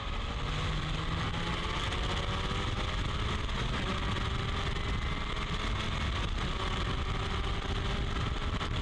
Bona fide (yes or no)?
yes